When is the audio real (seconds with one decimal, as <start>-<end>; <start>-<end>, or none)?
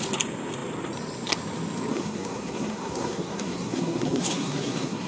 0.0-1.9